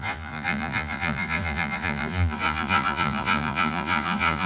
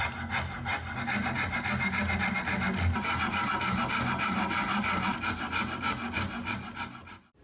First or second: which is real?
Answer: second